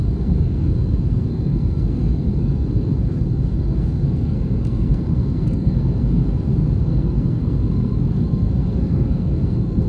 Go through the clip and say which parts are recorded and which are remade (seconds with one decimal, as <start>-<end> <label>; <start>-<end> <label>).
0.0-9.9 remade